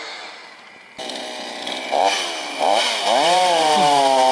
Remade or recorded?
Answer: remade